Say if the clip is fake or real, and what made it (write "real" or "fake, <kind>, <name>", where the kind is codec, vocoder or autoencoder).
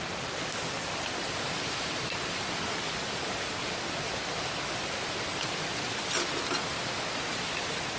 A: real